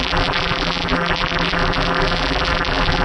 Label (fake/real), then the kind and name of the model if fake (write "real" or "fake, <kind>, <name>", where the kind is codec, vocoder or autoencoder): fake, vocoder, BigVGAN v2